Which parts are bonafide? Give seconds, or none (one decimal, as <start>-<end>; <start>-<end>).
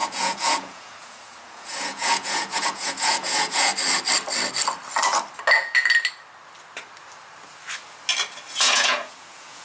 3.7-8.5